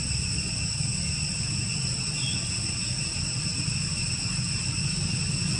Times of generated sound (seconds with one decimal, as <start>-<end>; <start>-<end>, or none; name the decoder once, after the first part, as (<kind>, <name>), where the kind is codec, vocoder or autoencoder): 0.9-1.4 (vocoder, BigVGAN v2); 1.8-2.3; 3.5-4.1